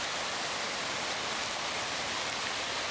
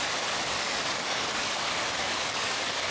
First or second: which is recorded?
first